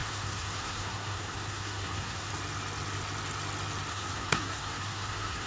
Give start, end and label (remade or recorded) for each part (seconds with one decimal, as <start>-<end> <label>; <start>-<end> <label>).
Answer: 0.0-2.3 remade; 2.3-3.9 recorded; 3.9-5.5 remade